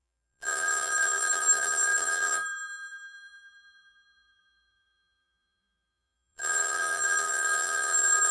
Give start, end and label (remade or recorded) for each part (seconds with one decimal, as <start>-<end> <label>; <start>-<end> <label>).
0.0-8.3 remade